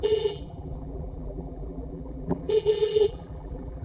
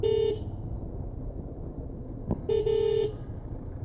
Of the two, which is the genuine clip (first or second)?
second